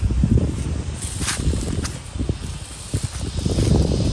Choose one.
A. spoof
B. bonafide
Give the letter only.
B